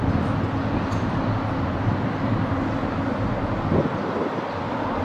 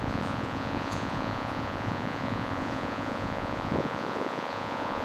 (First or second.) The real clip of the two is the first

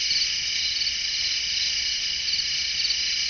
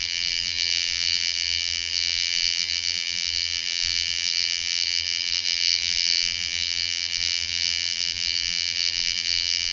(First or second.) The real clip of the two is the first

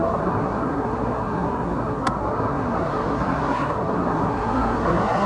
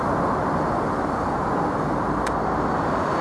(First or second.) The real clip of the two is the second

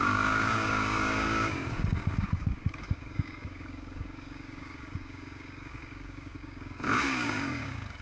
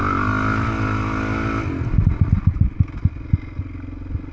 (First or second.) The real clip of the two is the second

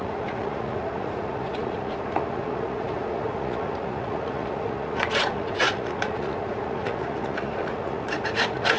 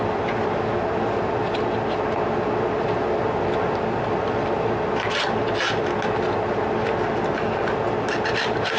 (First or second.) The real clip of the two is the second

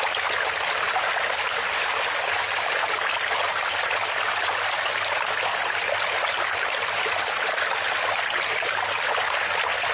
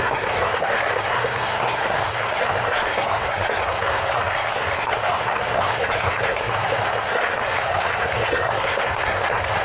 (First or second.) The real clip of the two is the first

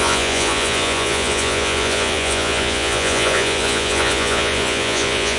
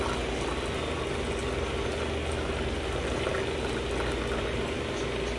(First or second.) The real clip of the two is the second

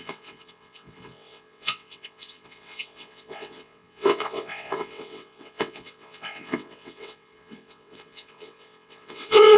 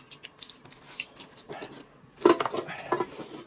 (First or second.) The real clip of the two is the second